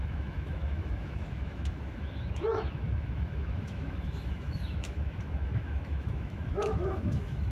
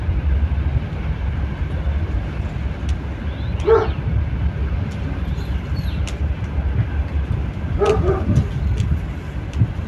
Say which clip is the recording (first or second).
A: second